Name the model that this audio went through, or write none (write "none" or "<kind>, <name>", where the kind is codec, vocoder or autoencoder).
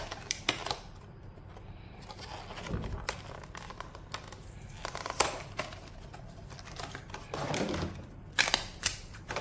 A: vocoder, BigVGAN v2